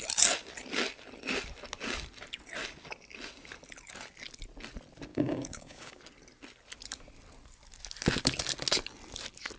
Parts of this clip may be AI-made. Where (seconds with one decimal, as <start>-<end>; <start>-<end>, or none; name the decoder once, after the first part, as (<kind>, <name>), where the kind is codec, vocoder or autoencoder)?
5.1-6.0 (codec, DAC)